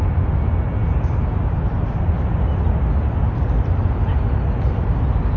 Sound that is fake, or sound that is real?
real